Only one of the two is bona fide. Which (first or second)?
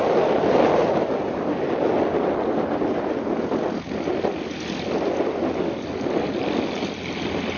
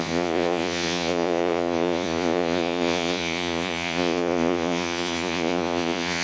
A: first